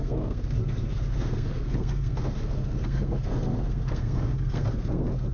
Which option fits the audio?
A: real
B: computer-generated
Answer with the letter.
B